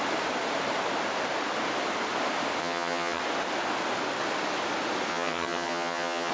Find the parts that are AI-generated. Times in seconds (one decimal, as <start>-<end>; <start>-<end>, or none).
2.6-3.2; 5.1-6.3